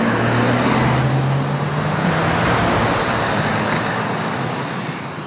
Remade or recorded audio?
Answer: recorded